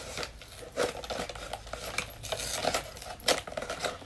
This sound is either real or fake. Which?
real